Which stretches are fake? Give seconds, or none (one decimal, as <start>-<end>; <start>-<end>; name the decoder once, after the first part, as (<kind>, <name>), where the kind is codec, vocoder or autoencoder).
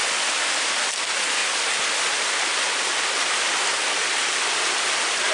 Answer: 0.0-0.7 (vocoder, BigVGAN v2); 1.4-4.6